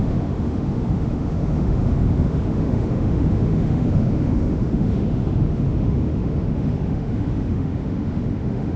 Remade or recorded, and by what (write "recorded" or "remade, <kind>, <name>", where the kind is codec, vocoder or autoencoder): remade, autoencoder, DAC-VAE